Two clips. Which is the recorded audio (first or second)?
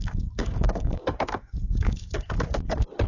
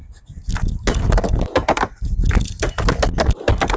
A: second